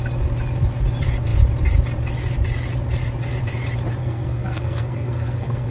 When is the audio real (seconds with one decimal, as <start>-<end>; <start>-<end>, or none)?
0.0-4.0